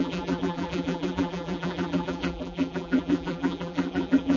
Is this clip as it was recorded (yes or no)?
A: no